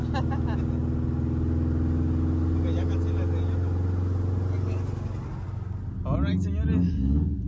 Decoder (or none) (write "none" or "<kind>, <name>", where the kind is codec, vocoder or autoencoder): none